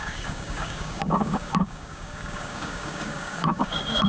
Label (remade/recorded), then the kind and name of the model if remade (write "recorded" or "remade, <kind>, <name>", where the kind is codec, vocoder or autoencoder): remade, codec, DAC